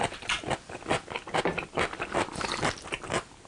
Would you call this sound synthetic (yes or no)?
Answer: no